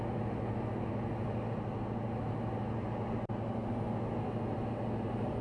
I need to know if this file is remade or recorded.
recorded